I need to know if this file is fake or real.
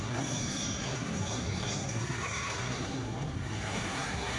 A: fake